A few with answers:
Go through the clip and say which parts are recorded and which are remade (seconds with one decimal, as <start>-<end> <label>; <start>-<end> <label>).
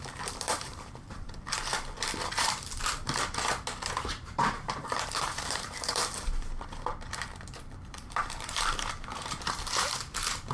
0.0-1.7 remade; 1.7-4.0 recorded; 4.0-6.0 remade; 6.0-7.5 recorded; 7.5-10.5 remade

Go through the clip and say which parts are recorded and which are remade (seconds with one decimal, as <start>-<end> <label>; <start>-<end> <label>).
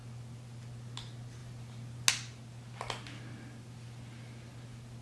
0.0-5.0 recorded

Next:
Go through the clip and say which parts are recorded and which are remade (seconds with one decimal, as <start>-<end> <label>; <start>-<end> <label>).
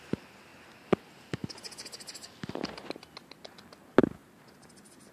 0.0-5.1 recorded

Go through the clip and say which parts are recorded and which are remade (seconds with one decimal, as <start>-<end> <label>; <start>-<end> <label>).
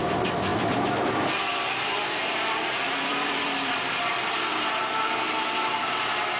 0.0-4.8 remade; 4.8-6.4 recorded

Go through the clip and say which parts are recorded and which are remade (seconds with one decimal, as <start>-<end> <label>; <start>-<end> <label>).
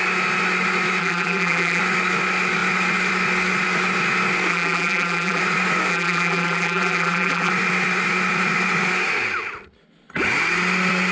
0.0-1.0 recorded; 1.0-1.8 remade; 1.8-4.5 recorded; 4.5-5.4 remade; 5.4-5.9 recorded; 5.9-7.5 remade; 7.5-11.1 recorded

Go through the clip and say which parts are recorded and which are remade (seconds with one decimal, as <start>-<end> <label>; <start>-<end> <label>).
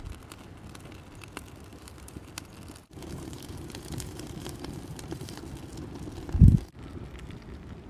0.0-1.7 recorded; 1.7-2.4 remade; 2.4-2.8 recorded; 2.8-5.4 remade; 5.4-7.9 recorded